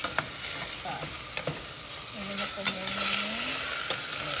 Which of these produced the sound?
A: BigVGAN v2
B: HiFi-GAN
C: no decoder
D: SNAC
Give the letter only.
C